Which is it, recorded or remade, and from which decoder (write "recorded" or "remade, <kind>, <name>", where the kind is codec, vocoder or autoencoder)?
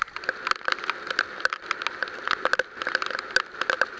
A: recorded